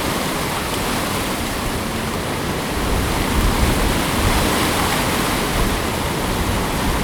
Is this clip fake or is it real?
real